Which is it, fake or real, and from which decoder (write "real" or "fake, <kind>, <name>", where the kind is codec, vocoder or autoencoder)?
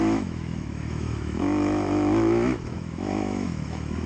fake, autoencoder, DAC-VAE